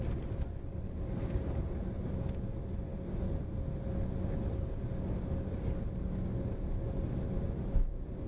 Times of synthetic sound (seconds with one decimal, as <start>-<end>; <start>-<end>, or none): none

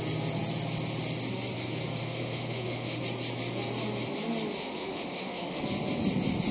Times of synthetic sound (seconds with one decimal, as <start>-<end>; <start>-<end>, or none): 2.0-3.0; 4.6-5.6

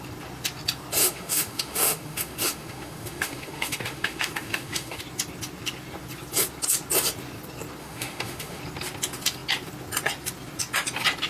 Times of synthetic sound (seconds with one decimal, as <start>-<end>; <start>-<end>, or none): 1.0-5.0; 7.8-8.6

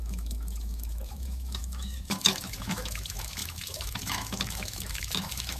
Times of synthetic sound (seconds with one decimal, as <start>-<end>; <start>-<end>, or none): 0.0-5.6

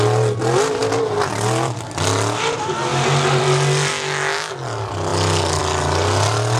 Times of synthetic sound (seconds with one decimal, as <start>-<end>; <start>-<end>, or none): 3.9-4.5

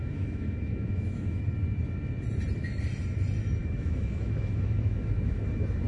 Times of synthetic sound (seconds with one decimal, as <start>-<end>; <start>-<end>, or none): 0.0-1.4; 3.6-5.4